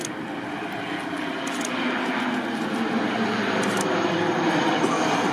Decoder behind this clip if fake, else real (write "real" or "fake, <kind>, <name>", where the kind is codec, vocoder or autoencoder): real